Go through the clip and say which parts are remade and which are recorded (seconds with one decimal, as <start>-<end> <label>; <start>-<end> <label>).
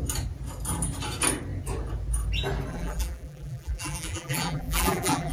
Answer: 0.0-2.7 recorded; 2.7-5.3 remade